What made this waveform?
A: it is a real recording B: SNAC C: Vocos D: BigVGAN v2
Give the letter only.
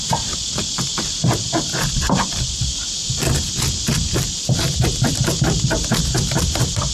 A